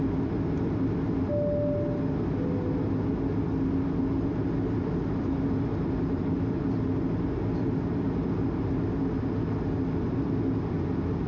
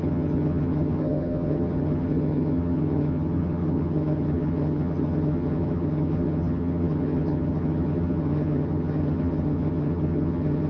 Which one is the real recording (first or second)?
first